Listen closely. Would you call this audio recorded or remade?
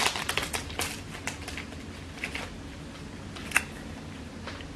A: recorded